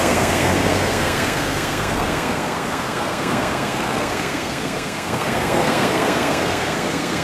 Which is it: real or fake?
fake